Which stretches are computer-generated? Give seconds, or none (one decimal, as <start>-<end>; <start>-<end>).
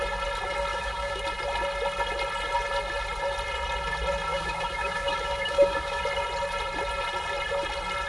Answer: 0.7-1.2; 4.3-6.0